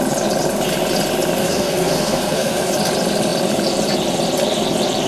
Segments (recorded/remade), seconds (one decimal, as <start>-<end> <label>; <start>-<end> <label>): 0.0-1.4 recorded; 1.4-2.7 remade; 2.7-5.1 recorded